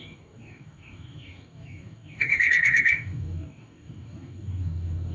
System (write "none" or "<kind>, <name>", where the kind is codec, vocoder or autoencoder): codec, DAC